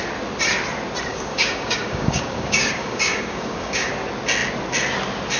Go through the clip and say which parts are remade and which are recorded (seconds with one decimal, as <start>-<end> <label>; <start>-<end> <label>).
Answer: 0.0-1.1 recorded; 1.1-3.9 remade; 3.9-5.4 recorded